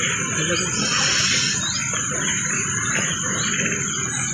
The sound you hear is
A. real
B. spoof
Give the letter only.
A